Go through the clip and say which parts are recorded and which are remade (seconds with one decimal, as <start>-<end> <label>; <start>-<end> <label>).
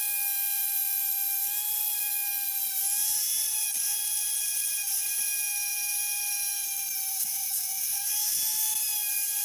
0.0-7.1 recorded; 7.1-8.1 remade; 8.1-9.4 recorded